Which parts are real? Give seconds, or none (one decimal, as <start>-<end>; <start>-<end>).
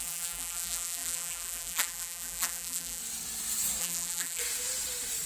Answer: 3.0-3.8; 4.4-5.3